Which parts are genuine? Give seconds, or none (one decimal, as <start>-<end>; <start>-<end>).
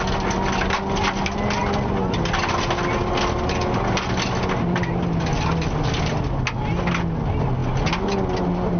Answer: 0.0-8.8